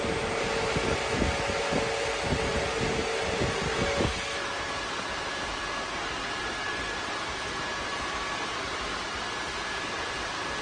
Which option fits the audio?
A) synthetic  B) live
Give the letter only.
B